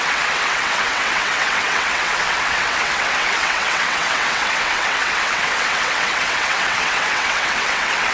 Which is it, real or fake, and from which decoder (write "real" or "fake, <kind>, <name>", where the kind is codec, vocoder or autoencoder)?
fake, vocoder, WaveNeXt